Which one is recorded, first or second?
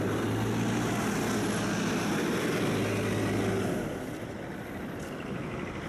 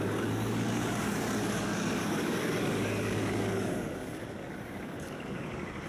first